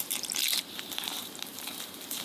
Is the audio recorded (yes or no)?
no